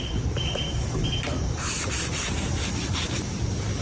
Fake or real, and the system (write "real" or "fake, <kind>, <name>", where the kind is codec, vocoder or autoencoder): fake, vocoder, BigVGAN v2